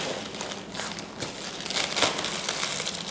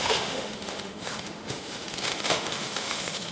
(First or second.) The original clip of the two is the first